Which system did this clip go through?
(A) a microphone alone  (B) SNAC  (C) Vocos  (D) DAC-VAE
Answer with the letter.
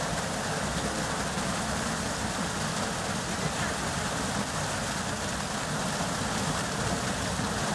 A